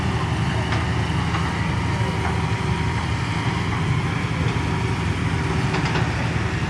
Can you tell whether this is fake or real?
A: real